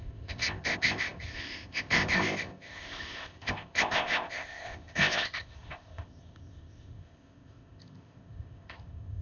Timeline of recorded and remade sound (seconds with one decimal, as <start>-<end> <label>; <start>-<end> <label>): 0.0-9.2 remade